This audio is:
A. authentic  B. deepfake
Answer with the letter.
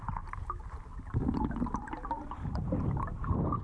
A